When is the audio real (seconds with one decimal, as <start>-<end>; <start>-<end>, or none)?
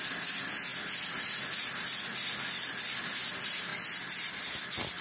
0.0-5.0